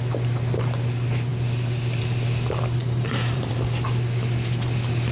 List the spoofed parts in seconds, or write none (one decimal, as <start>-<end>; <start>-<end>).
2.8-3.5

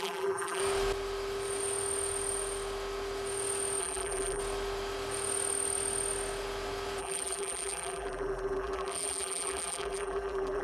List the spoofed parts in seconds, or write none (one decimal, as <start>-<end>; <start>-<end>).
0.0-0.6; 3.8-4.4; 7.0-10.6

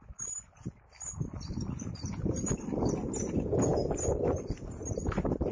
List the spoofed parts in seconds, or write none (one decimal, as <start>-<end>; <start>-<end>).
none

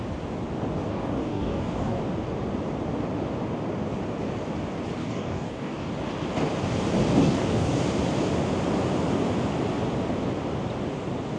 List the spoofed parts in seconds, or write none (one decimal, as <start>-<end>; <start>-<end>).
0.9-2.0; 5.0-5.9; 7.2-7.7

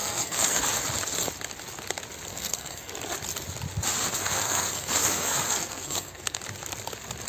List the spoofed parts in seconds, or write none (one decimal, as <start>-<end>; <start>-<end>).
0.0-0.6; 2.3-2.9; 4.2-6.4

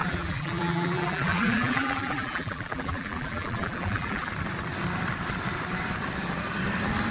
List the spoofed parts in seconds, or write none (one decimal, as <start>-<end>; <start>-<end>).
0.0-4.3